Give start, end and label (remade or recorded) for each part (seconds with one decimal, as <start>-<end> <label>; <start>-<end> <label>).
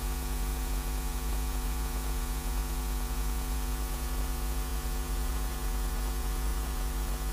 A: 0.0-7.3 remade